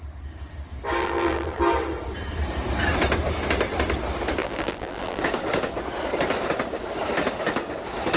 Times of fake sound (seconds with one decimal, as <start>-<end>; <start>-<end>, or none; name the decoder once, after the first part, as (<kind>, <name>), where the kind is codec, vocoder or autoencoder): 1.0-1.6 (vocoder, BigVGAN v2); 4.4-5.2

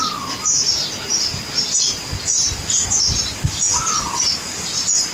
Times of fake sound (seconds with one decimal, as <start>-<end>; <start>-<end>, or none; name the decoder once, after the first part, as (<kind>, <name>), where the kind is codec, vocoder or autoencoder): none

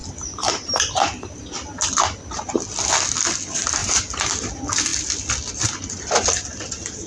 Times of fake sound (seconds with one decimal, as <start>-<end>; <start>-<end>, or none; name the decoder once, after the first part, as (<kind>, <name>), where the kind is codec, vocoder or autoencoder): 0.0-1.4 (vocoder, BigVGAN v2); 3.8-4.3

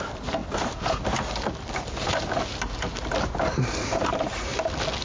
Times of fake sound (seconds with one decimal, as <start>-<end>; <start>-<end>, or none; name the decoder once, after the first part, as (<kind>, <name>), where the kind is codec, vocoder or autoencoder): 0.0-0.4 (vocoder, BigVGAN v2); 1.9-4.5

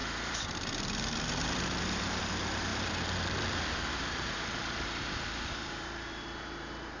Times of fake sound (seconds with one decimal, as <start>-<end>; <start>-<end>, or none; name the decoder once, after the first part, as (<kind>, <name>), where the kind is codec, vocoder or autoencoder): 0.0-2.2 (vocoder, BigVGAN v2); 2.7-7.0

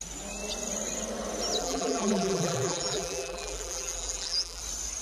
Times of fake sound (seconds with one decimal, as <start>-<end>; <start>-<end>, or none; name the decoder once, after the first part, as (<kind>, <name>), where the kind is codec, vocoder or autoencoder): 1.6-4.6 (vocoder, BigVGAN v2)